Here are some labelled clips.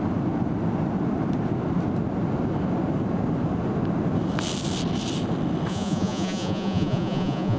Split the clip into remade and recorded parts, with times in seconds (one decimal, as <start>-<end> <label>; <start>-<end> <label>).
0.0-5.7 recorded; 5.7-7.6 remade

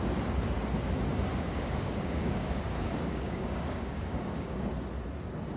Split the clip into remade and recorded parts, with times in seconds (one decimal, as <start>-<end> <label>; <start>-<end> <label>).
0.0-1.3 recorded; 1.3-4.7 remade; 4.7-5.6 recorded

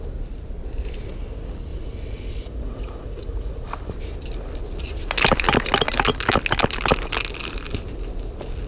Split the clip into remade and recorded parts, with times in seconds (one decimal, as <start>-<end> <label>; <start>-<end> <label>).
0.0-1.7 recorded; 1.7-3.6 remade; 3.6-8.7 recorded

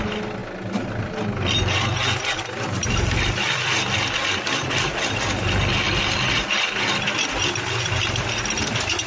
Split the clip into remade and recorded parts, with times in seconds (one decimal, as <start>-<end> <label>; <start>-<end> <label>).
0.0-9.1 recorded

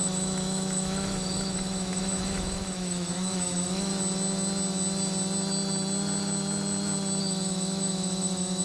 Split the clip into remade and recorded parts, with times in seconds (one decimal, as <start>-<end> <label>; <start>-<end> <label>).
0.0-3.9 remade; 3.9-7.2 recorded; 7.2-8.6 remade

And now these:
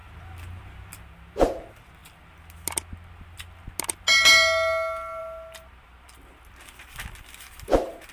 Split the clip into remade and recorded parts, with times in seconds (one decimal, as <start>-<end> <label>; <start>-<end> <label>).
0.0-8.1 recorded

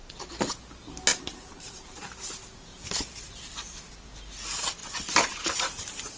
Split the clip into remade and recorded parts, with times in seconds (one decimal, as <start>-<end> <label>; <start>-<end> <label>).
0.0-1.1 recorded; 1.1-2.3 remade; 2.3-2.7 recorded; 2.7-3.9 remade; 3.9-4.8 recorded; 4.8-6.2 remade